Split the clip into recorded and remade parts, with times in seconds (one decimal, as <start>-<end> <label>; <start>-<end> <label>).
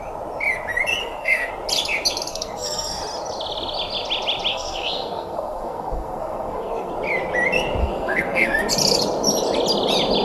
0.0-1.0 recorded; 1.0-1.5 remade; 1.5-2.3 recorded; 2.3-3.0 remade; 3.0-4.5 recorded; 4.5-6.9 remade; 6.9-7.8 recorded; 7.8-8.7 remade; 8.7-10.2 recorded